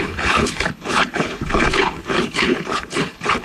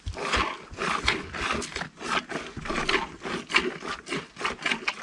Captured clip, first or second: second